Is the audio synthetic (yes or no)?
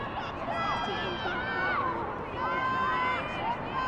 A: no